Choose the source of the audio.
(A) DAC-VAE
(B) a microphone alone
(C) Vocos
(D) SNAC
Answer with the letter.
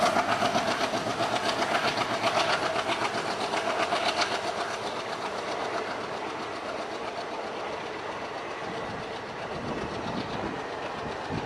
B